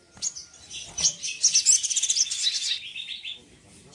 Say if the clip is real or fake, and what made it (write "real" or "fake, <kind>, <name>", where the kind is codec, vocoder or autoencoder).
real